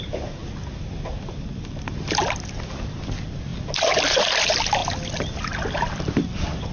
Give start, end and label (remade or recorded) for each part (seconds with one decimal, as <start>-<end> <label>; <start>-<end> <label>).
0.0-6.7 recorded